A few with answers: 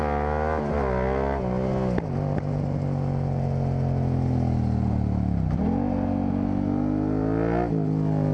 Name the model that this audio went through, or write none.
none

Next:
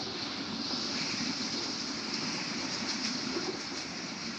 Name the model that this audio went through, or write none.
none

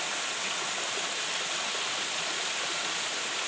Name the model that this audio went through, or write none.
none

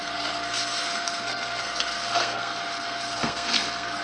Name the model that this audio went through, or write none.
codec, SNAC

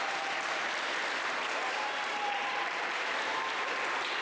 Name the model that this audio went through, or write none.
vocoder, BigVGAN v2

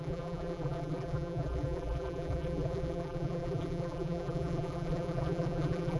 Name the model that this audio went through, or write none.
vocoder, BigVGAN v2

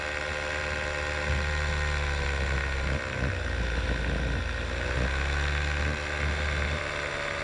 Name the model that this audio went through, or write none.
none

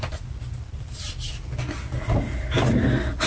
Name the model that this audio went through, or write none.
none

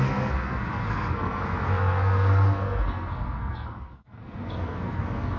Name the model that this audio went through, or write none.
codec, SNAC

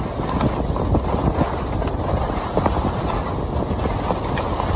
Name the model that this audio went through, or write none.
none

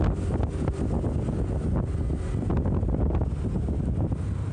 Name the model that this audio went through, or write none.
none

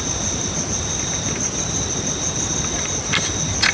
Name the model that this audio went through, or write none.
none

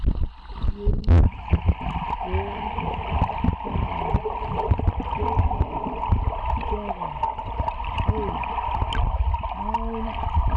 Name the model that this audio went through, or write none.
none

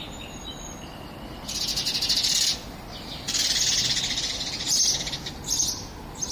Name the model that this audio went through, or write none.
none